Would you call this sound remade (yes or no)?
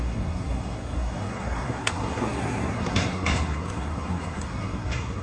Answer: yes